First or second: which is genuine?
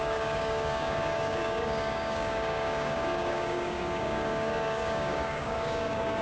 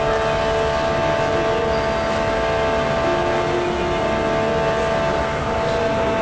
second